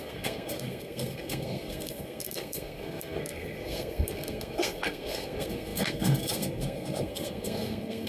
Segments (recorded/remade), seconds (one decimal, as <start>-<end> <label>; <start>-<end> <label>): 0.0-8.1 remade